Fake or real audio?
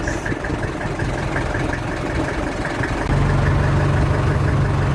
real